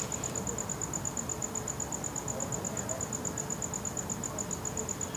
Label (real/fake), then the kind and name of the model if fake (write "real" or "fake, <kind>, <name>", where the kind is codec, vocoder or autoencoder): real